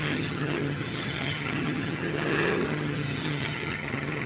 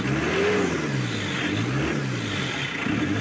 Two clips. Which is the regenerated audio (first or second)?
first